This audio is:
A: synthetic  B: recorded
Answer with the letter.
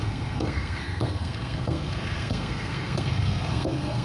A